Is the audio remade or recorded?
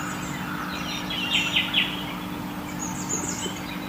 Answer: recorded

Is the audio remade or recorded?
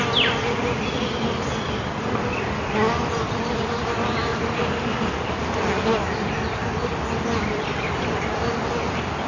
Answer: recorded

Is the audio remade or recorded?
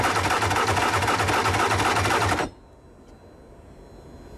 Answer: recorded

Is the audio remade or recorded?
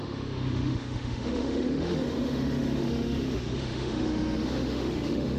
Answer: remade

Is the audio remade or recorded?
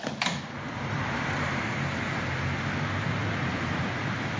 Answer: recorded